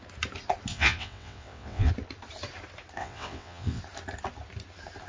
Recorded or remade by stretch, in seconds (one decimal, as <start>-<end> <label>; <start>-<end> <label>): 0.0-0.7 recorded; 0.7-1.9 remade; 1.9-3.0 recorded; 3.0-3.8 remade; 3.8-5.1 recorded